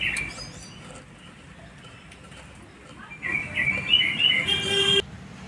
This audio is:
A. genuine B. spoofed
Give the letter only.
A